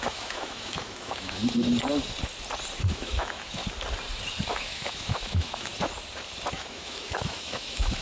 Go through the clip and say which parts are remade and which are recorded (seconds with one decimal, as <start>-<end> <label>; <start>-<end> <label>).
0.0-1.4 remade; 1.4-2.9 recorded; 2.9-3.6 remade; 3.6-4.5 recorded; 4.5-5.7 remade; 5.7-6.5 recorded; 6.5-8.0 remade